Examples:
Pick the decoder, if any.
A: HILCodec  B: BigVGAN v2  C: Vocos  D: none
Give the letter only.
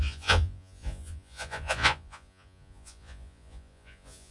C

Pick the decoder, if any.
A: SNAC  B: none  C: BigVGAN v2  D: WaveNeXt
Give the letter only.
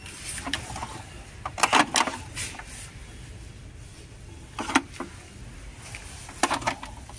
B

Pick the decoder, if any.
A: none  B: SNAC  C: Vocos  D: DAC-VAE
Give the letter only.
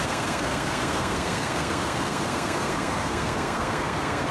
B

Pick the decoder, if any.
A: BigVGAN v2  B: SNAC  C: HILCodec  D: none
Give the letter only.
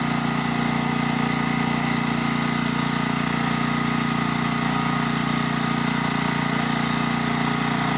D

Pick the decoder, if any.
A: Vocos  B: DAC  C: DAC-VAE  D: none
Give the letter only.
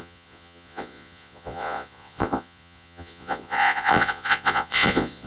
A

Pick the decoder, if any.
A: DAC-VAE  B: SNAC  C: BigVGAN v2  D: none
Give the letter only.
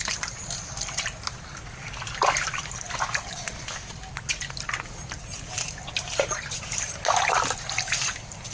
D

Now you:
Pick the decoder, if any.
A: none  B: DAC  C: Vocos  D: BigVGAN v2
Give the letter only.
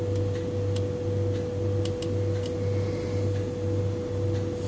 A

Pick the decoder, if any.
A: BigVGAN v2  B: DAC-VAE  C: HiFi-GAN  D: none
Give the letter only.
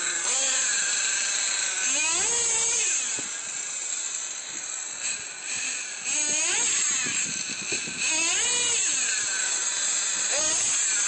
D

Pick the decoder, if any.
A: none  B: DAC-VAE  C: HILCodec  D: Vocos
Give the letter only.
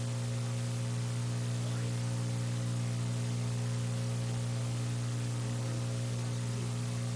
A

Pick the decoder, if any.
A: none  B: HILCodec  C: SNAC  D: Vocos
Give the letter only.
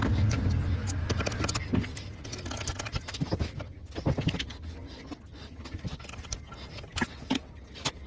A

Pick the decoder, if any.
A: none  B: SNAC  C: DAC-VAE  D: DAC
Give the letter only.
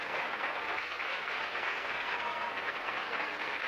B